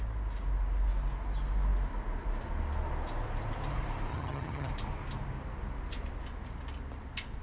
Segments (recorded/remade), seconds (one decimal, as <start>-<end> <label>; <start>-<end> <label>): 0.0-4.1 recorded; 4.1-4.7 remade; 4.7-7.4 recorded